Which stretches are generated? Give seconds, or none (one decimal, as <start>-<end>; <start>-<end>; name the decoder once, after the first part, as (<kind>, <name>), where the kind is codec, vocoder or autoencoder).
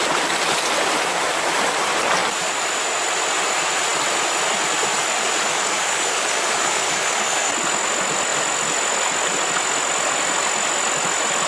5.5-7.5 (codec, DAC)